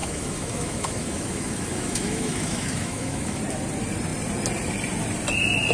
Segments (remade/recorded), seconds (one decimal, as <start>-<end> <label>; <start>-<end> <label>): 0.0-3.4 remade; 3.4-5.7 recorded